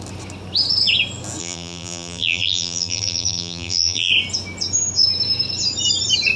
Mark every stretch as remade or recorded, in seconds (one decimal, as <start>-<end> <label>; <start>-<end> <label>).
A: 0.0-1.4 recorded; 1.4-4.1 remade; 4.1-6.4 recorded